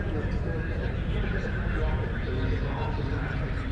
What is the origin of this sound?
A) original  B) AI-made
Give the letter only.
A